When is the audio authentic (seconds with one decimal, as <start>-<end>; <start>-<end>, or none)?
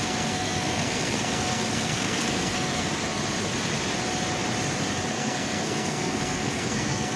2.9-5.1